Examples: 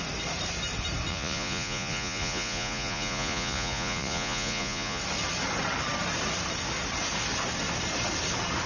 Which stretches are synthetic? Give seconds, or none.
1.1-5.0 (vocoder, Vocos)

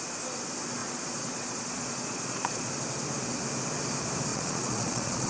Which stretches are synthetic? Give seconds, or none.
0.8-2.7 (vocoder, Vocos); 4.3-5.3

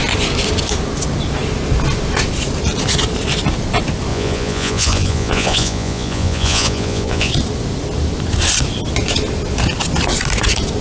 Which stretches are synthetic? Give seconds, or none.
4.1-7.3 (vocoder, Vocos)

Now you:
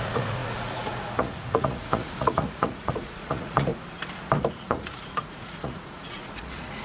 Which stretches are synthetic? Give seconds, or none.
0.0-3.7 (vocoder, Vocos); 4.5-6.8